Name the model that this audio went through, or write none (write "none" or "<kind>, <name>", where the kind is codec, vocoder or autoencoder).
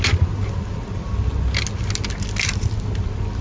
none